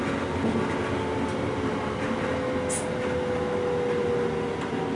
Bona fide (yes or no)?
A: yes